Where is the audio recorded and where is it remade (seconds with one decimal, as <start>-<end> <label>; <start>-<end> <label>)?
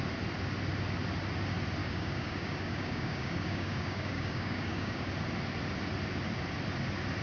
0.0-1.8 recorded; 1.8-5.1 remade; 5.1-7.2 recorded